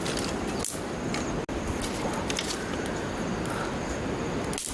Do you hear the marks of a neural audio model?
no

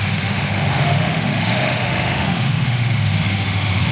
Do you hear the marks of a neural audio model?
yes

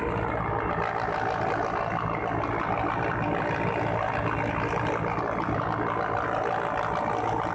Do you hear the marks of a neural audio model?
no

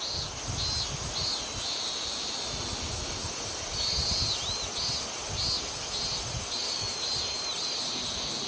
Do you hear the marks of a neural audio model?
no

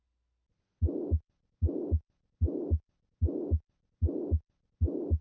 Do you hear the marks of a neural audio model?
no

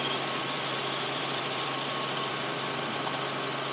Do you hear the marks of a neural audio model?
yes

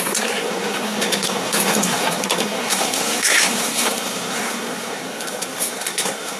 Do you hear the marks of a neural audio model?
yes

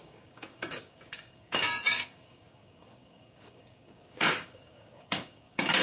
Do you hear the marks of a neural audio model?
yes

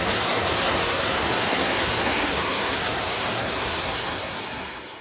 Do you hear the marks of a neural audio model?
yes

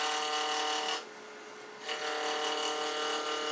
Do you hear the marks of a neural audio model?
no